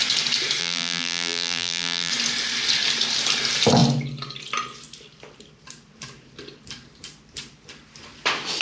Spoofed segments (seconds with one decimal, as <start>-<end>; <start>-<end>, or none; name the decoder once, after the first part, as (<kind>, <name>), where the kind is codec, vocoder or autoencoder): 0.6-2.1 (vocoder, BigVGAN v2)